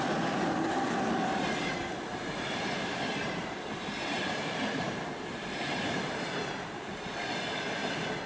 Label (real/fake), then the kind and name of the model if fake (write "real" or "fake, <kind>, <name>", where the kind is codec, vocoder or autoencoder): fake, vocoder, BigVGAN v2